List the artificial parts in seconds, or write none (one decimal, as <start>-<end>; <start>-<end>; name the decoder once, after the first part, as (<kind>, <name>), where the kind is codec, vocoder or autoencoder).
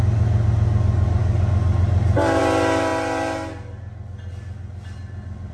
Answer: none